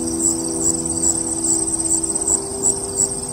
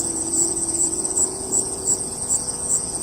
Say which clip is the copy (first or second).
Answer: second